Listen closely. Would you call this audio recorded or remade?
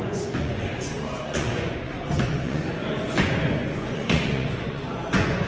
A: remade